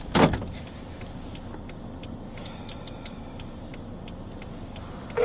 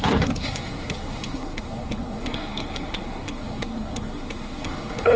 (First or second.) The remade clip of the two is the second